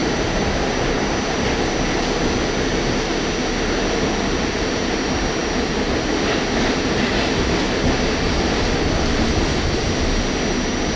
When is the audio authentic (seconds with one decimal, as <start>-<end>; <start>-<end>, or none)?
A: 1.7-11.0